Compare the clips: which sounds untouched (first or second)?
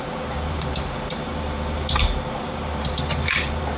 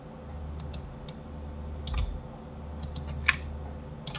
second